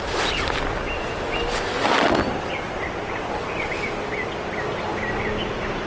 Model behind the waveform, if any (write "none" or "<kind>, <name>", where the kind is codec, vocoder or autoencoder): none